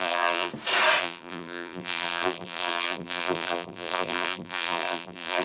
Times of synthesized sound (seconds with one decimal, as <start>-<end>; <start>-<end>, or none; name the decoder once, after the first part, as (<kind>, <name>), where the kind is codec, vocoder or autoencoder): 0.0-0.5 (vocoder, BigVGAN v2); 1.0-5.4